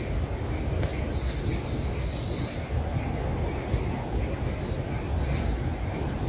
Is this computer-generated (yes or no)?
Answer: no